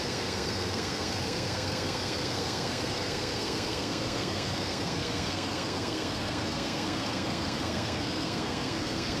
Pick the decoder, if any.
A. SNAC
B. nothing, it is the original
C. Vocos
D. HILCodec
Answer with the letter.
A